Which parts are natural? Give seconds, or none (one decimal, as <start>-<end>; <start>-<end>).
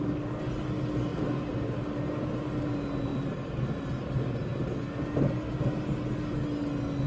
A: 0.0-7.1